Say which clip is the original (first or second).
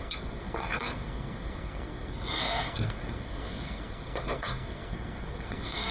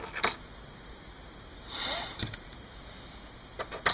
second